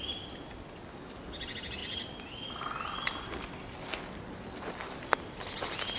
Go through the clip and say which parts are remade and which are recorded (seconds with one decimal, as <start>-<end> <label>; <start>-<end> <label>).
0.0-6.0 recorded